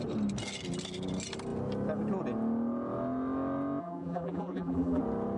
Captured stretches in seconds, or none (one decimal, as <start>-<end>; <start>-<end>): 0.0-3.8; 5.0-5.4